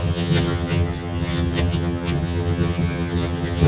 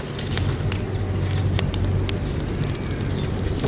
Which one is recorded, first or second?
second